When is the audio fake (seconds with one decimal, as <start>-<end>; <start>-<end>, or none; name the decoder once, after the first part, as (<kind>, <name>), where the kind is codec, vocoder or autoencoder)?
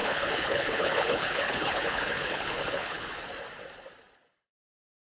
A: 0.0-3.1 (codec, HILCodec)